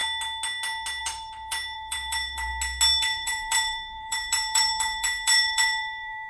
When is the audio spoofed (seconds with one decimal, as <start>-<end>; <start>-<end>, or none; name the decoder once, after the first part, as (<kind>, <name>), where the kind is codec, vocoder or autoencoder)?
1.0-2.5 (vocoder, BigVGAN v2); 3.0-6.3